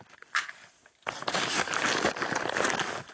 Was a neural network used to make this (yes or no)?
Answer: no